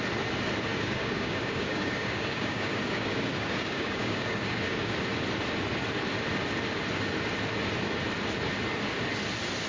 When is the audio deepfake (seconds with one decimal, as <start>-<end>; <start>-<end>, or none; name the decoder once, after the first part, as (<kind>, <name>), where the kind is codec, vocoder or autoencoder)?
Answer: 0.7-4.9 (codec, DAC)